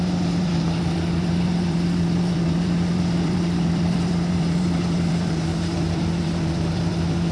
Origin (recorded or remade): remade